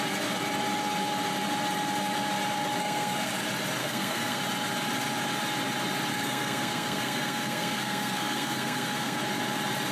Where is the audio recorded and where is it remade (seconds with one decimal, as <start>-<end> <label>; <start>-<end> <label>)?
0.0-2.8 recorded; 2.8-3.3 remade; 3.3-3.8 recorded; 3.8-4.4 remade; 4.4-6.1 recorded; 6.1-9.2 remade; 9.2-9.9 recorded